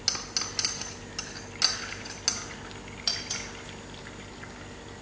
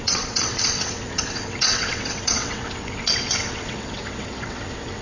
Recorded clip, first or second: first